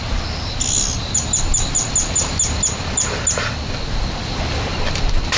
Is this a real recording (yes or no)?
yes